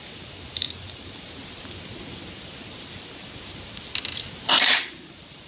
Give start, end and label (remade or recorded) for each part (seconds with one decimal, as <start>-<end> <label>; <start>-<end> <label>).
0.0-1.4 remade; 1.4-4.5 recorded; 4.5-5.5 remade